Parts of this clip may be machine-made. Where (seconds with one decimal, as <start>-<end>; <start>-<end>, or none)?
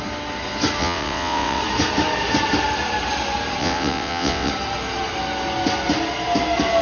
0.8-1.6; 3.6-4.5